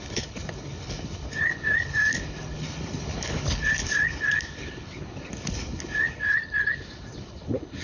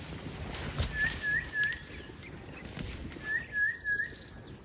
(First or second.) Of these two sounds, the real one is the second